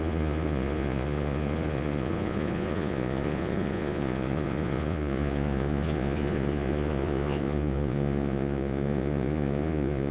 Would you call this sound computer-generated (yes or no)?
yes